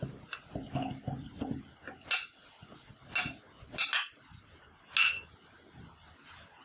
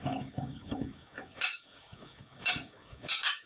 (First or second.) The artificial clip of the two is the second